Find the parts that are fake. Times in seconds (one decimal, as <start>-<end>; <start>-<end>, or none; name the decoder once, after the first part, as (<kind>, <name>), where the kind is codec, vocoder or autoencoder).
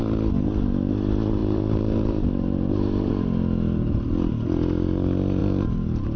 1.4-3.1 (vocoder, BigVGAN v2)